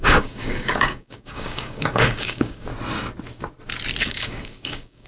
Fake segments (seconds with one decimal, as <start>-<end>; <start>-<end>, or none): 0.0-2.7; 4.0-5.1